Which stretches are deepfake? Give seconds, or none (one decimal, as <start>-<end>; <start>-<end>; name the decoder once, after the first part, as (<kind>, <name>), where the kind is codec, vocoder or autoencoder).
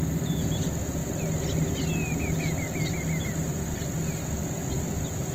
1.0-4.2 (vocoder, BigVGAN v2)